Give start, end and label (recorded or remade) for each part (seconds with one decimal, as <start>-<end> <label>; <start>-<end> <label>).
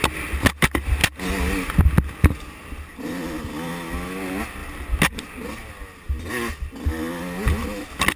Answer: 0.0-8.2 recorded